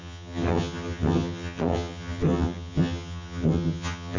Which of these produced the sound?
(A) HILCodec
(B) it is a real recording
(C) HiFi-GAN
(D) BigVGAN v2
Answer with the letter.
C